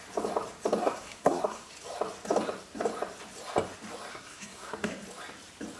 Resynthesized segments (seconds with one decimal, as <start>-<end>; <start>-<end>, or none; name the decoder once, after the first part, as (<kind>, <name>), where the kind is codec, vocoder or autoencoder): 0.8-1.7 (codec, SNAC); 4.1-4.9